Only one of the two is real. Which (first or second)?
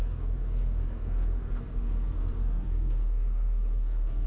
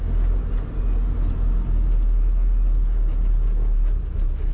second